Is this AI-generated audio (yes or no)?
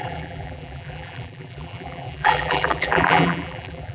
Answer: yes